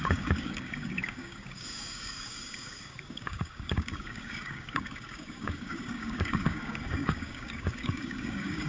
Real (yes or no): no